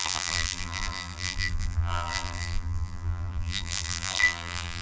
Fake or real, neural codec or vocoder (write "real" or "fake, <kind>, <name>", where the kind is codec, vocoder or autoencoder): fake, vocoder, BigVGAN v2